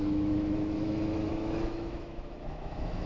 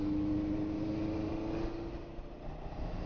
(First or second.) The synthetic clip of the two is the first